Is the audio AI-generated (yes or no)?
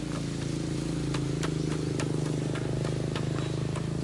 no